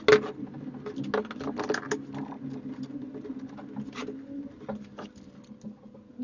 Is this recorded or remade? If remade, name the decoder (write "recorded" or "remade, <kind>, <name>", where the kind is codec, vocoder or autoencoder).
recorded